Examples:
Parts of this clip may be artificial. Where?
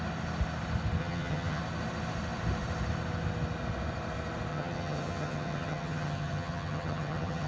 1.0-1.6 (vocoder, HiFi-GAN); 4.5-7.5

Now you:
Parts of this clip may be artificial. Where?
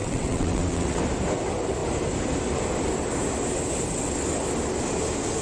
0.0-1.0 (vocoder, WaveNeXt)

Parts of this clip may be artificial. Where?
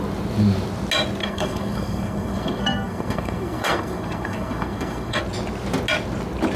1.2-5.2 (codec, SNAC)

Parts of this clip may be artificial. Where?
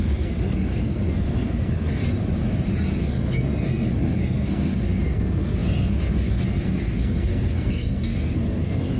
0.0-2.0 (codec, SNAC); 3.0-9.0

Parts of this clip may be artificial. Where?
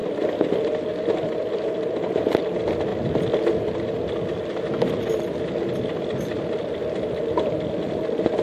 none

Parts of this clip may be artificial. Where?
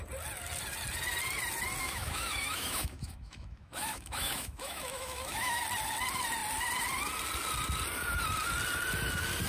1.8-5.6 (autoencoder, DAC-VAE)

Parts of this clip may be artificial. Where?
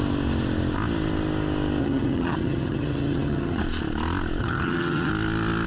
1.8-3.6 (vocoder, HiFi-GAN); 4.4-5.1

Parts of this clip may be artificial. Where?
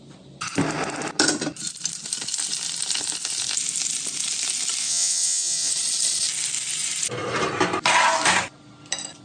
4.8-5.7 (vocoder, WaveNeXt)